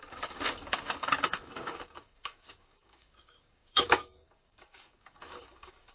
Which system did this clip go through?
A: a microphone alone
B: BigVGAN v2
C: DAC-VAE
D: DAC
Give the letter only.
D